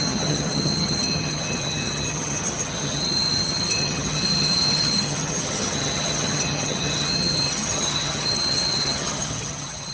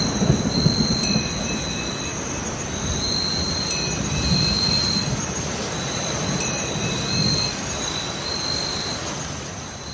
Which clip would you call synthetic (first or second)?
first